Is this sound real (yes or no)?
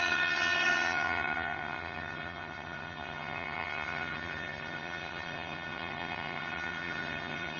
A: no